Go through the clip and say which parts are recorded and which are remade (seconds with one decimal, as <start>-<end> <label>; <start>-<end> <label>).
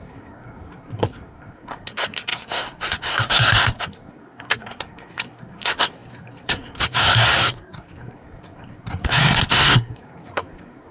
0.0-10.9 remade